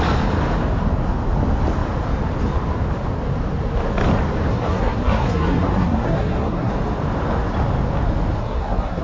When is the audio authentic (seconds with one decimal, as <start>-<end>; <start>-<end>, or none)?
0.0-4.5; 6.7-8.4